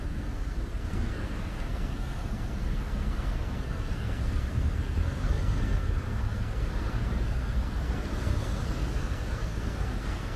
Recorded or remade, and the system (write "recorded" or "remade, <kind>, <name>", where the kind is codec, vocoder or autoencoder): remade, codec, SNAC